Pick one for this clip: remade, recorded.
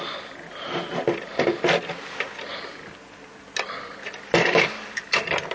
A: recorded